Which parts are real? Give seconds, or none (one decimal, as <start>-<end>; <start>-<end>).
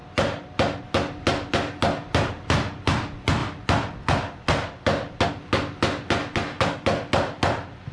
0.0-7.9